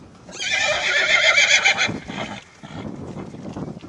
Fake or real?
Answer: real